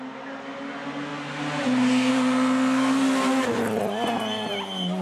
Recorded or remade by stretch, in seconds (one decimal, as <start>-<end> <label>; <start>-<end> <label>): 0.0-5.0 recorded